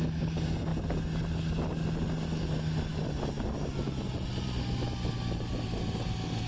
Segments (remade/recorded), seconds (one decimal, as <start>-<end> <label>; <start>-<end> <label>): 0.0-6.5 recorded

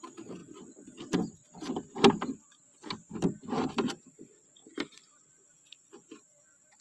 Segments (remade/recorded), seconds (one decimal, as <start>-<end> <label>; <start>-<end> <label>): 0.0-4.6 recorded; 4.6-5.3 remade; 5.3-6.8 recorded

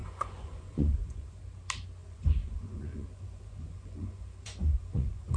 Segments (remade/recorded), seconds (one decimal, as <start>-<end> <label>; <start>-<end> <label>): 0.0-1.4 remade; 1.4-2.0 recorded; 2.0-5.4 remade

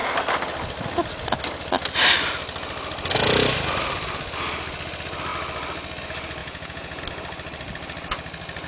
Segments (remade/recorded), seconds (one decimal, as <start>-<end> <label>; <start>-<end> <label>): 0.0-6.4 recorded; 6.4-7.0 remade; 7.0-8.7 recorded

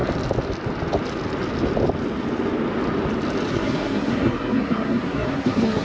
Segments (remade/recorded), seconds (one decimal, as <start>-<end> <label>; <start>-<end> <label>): 0.0-3.5 recorded; 3.5-5.8 remade

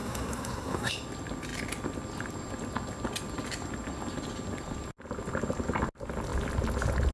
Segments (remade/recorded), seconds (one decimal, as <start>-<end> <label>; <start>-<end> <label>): 0.0-0.9 remade; 0.9-7.1 recorded

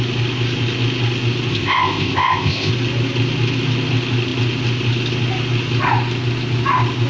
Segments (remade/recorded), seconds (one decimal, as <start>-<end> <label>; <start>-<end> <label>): 0.0-1.5 recorded; 1.5-2.7 remade; 2.7-7.1 recorded

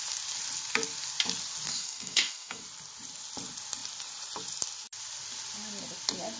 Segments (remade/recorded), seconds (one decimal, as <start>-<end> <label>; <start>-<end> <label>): 0.0-1.7 recorded; 1.7-2.6 remade; 2.6-6.4 recorded